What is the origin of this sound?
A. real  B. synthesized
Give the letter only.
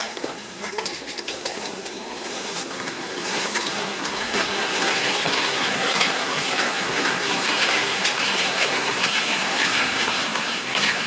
B